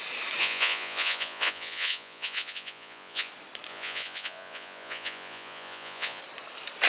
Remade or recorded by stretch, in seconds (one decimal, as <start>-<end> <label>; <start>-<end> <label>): 0.0-0.4 recorded; 0.4-3.3 remade; 3.3-3.7 recorded; 3.7-6.2 remade; 6.2-6.9 recorded